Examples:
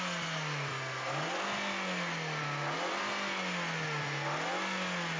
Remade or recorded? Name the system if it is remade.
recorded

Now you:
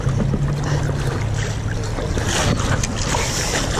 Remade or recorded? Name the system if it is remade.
recorded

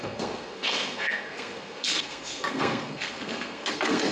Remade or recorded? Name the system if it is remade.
remade, codec, SNAC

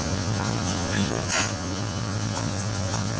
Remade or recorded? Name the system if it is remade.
remade, vocoder, Vocos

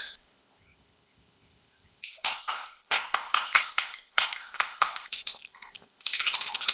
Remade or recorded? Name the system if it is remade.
remade, codec, ZipCodec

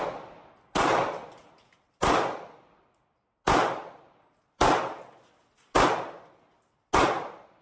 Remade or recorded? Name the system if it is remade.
recorded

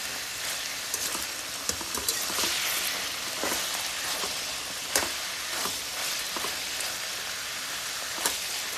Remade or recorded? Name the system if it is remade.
recorded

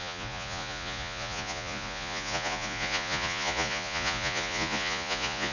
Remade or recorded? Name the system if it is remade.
remade, vocoder, Vocos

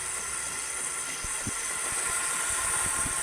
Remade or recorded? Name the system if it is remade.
recorded